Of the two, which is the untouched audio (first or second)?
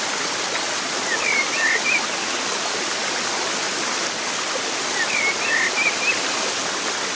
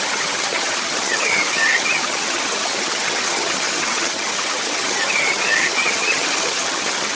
first